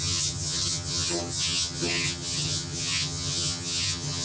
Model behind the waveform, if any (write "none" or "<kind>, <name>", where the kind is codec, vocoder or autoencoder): vocoder, HiFi-GAN